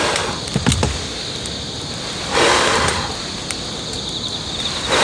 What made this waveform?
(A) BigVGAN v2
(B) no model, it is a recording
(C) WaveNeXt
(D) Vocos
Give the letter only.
B